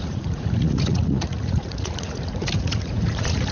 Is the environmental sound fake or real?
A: fake